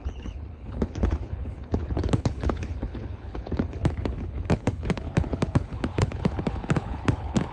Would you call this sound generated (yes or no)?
yes